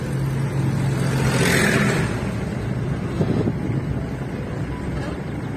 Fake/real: real